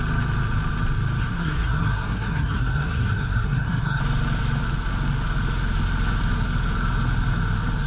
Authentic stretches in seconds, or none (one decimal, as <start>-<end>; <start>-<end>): 0.0-1.2; 4.0-7.9